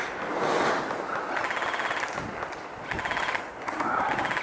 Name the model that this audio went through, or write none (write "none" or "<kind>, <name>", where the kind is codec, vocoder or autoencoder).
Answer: none